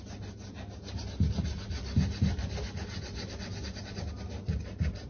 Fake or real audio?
real